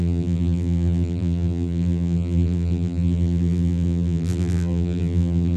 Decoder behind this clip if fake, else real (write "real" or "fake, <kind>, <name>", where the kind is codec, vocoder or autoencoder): fake, vocoder, BigVGAN v2